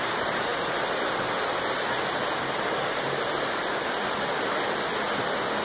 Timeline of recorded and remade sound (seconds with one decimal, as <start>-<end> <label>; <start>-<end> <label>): 0.0-5.6 recorded